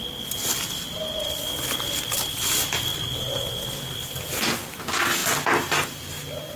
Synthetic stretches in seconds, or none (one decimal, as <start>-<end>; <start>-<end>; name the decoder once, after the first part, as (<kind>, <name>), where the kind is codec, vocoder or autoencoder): none